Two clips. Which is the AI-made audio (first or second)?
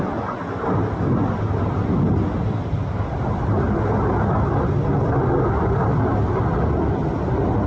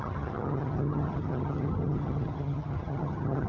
second